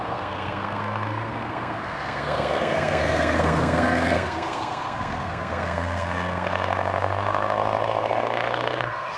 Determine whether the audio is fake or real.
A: fake